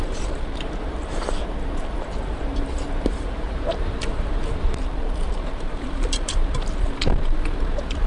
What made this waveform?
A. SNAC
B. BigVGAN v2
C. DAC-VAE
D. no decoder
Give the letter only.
B